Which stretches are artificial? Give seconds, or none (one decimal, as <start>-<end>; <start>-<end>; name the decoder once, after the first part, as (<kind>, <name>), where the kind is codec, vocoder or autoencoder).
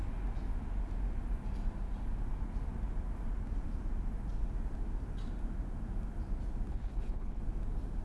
6.7-7.4 (codec, HILCodec)